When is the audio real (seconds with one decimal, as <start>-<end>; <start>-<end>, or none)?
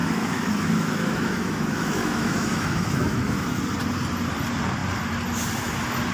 3.6-6.1